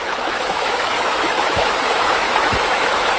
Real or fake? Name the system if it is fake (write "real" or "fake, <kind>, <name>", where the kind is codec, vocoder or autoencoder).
fake, autoencoder, DAC-VAE